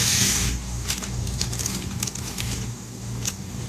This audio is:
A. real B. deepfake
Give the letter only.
B